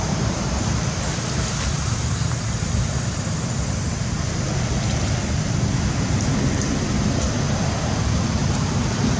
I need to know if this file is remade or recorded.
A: recorded